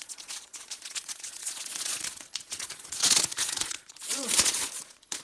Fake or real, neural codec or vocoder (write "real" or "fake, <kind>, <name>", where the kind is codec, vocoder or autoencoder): fake, vocoder, Vocos